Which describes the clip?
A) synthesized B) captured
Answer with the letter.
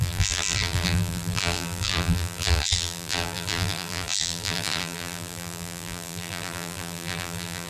A